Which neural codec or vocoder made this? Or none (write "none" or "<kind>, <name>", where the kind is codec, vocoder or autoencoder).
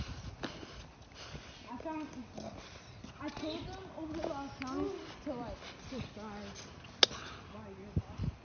none